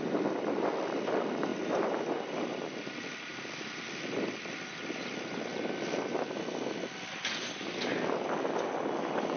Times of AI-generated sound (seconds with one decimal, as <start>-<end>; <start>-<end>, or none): 1.5-2.1